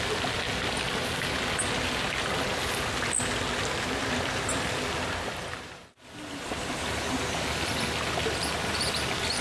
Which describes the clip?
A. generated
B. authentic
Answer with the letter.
B